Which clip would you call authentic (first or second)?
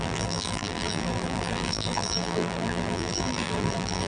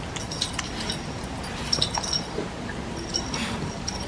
second